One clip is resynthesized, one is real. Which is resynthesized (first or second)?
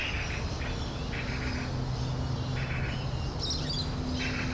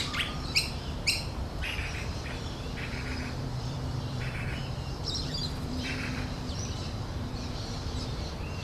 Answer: second